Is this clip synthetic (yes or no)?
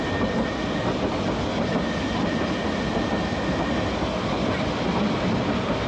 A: no